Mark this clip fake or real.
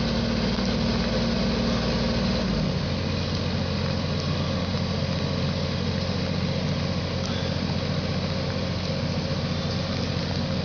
real